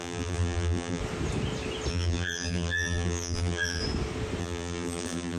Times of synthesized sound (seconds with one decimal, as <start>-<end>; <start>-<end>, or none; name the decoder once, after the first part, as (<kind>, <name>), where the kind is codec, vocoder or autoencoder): 0.0-1.0 (vocoder, BigVGAN v2); 1.9-3.8; 4.4-5.4